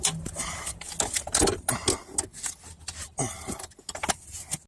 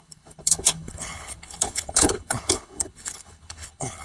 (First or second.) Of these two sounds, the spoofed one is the second